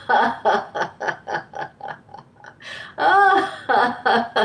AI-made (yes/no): no